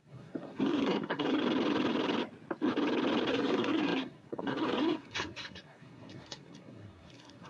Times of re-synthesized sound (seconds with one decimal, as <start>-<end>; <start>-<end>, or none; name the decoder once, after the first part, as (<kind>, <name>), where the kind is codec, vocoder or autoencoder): 0.0-1.4 (codec, SNAC); 3.3-7.5